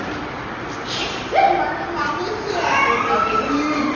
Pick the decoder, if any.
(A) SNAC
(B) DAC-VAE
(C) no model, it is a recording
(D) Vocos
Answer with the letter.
C